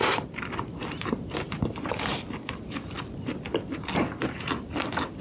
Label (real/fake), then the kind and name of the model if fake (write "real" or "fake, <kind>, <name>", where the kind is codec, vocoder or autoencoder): real